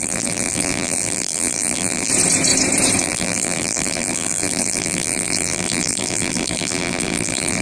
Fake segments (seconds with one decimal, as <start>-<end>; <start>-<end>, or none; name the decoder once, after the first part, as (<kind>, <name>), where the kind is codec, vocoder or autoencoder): 0.0-2.1 (vocoder, BigVGAN v2); 3.0-7.6